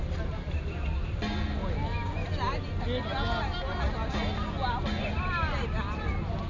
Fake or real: real